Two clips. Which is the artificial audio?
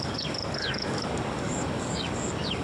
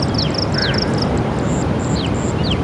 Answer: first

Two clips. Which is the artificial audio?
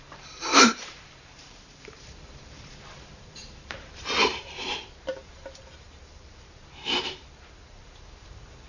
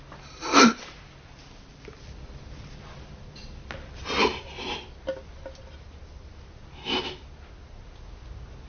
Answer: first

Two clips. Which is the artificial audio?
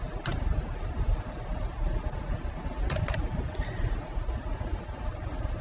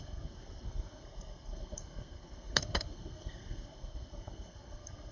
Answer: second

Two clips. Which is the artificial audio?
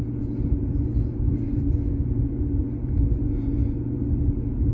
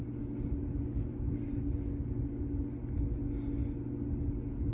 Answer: first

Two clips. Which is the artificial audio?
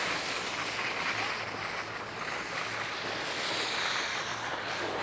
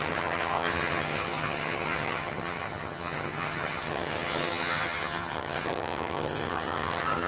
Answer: second